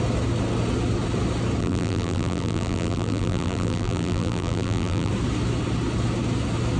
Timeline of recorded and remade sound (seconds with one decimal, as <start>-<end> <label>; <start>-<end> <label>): 0.0-1.6 recorded; 1.6-5.1 remade; 5.1-6.8 recorded